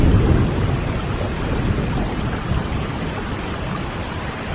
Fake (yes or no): no